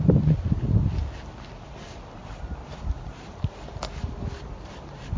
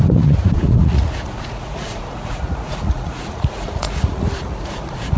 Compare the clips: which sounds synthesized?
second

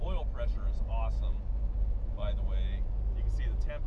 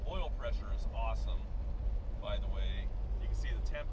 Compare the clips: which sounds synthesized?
second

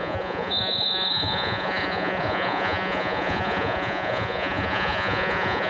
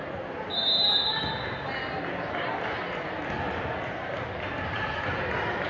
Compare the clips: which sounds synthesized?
first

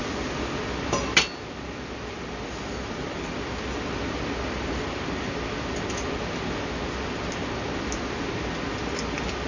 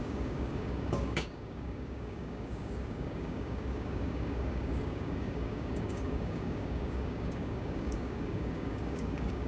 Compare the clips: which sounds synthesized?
second